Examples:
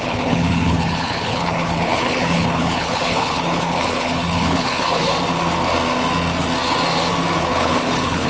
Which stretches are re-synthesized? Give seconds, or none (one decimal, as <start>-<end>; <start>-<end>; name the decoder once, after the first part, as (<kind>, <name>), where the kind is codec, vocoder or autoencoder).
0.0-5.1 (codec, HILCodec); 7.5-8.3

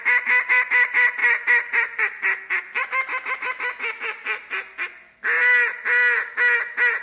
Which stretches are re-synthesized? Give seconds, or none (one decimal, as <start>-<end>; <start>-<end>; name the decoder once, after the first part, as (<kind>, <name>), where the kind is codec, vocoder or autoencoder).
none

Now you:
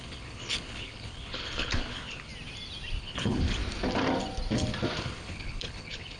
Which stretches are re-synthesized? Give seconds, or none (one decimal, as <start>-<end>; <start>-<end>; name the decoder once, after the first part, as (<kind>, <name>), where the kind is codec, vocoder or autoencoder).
0.0-2.3 (codec, HILCodec); 3.0-3.6; 5.0-6.2